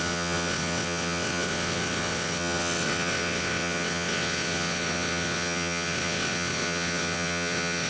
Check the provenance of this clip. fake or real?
fake